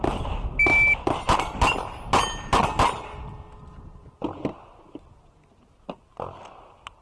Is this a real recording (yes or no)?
yes